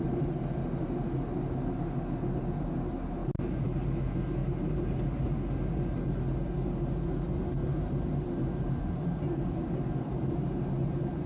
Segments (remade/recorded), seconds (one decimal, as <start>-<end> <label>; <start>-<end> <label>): 0.0-4.4 recorded; 4.4-5.2 remade; 5.2-7.6 recorded; 7.6-8.7 remade; 8.7-11.3 recorded